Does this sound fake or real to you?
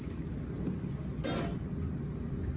real